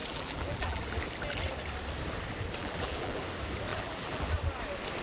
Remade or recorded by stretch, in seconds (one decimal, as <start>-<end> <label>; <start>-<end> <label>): 0.0-0.8 remade; 0.8-2.6 recorded; 2.6-3.2 remade; 3.2-3.7 recorded; 3.7-4.3 remade; 4.3-5.0 recorded